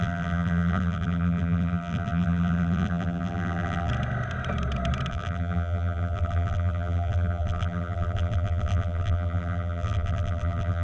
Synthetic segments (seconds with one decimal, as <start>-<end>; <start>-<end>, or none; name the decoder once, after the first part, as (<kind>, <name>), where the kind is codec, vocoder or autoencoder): 0.0-3.9 (vocoder, BigVGAN v2); 5.1-10.8